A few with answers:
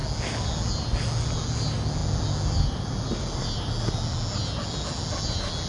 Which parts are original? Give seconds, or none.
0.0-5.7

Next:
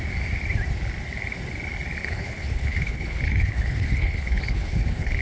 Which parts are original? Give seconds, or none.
0.0-2.0

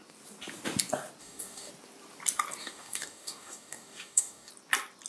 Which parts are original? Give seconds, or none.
0.0-1.2; 1.7-2.6; 4.5-5.1

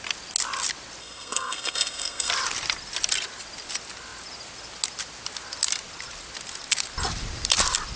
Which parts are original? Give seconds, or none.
0.0-1.0; 2.3-8.0

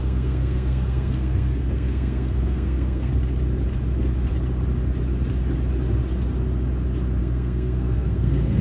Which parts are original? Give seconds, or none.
3.1-7.2

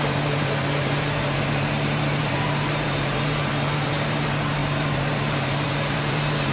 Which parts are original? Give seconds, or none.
none